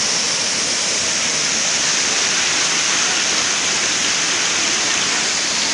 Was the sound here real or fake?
real